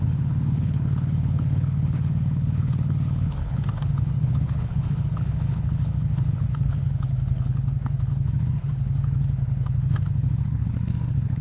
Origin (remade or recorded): remade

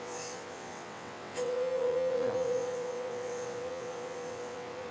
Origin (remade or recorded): remade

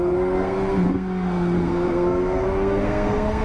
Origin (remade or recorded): remade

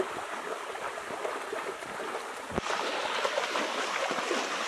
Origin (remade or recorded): recorded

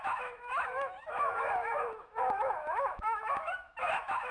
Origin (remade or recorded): remade